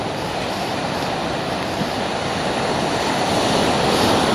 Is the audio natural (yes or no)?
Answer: no